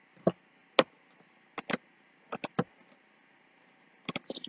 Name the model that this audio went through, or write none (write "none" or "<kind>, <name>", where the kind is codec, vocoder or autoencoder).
none